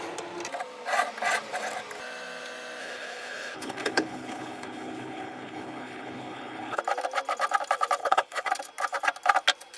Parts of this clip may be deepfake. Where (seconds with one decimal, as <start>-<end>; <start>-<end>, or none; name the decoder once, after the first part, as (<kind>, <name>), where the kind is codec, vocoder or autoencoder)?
2.8-6.8 (codec, HILCodec); 8.0-8.5